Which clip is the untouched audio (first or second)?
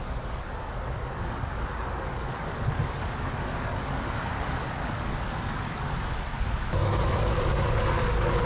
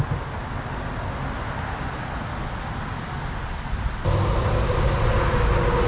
second